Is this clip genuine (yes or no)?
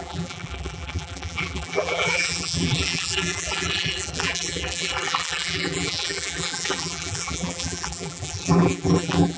no